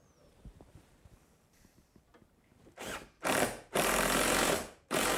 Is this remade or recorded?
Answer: remade